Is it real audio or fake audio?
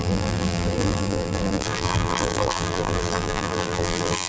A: fake